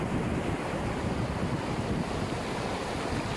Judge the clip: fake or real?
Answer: real